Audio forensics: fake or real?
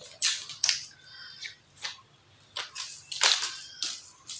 real